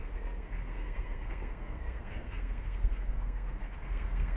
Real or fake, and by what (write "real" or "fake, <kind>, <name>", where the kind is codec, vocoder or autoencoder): fake, codec, SNAC